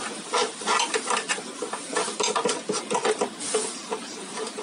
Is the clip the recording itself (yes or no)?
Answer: yes